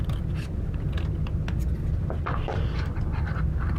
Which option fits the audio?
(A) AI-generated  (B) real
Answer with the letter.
B